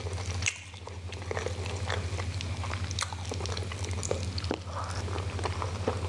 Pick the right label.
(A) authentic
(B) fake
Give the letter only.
A